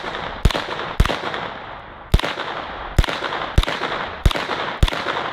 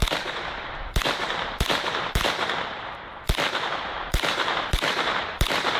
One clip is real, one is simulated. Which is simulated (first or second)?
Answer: second